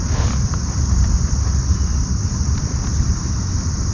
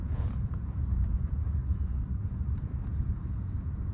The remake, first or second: second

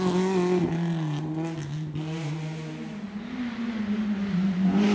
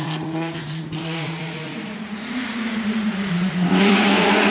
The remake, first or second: second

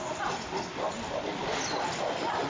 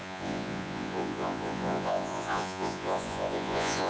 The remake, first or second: second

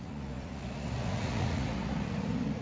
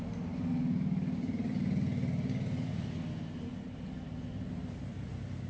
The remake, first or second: first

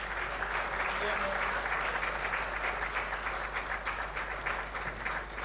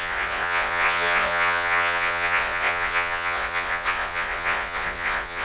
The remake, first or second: second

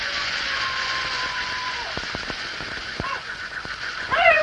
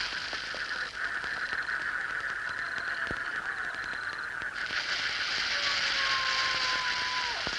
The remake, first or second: first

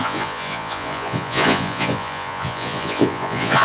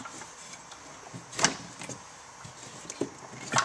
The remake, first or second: first